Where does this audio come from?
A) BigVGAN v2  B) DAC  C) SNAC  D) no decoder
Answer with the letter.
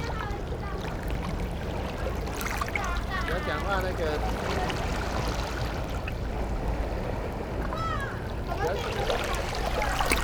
D